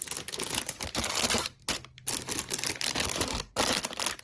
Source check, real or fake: real